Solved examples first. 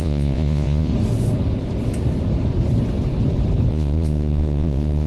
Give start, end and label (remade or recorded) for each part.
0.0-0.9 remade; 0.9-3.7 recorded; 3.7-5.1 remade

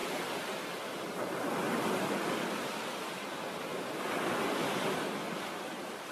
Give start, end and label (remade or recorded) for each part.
0.0-3.7 recorded; 3.7-5.6 remade; 5.6-6.1 recorded

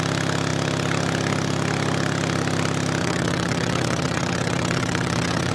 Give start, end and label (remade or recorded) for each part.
0.0-3.0 recorded; 3.0-5.5 remade

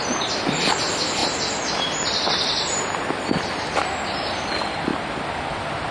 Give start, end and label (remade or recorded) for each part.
0.0-5.9 recorded

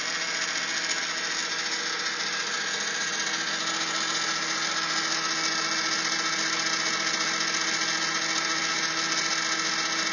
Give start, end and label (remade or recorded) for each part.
0.0-10.1 recorded

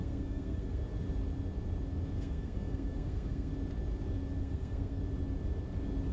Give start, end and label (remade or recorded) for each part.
0.0-0.8 remade; 0.8-2.2 recorded; 2.2-3.5 remade; 3.5-4.4 recorded; 4.4-5.0 remade; 5.0-6.1 recorded